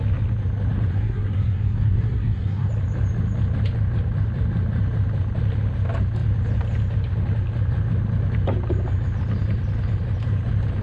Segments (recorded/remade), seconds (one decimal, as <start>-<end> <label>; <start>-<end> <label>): 0.0-0.9 recorded; 0.9-2.7 remade; 2.7-10.8 recorded